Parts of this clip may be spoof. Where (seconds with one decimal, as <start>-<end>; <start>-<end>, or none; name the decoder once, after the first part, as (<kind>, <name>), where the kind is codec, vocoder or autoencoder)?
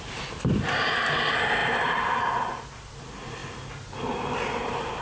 0.0-5.0 (vocoder, BigVGAN v2)